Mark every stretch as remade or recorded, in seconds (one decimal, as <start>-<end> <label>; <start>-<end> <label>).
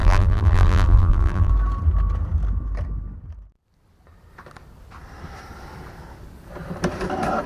0.0-1.5 remade; 1.5-7.5 recorded